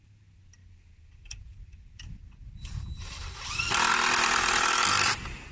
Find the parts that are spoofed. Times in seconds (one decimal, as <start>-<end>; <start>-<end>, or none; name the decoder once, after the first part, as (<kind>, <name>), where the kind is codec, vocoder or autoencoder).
0.0-5.5 (vocoder, BigVGAN v2)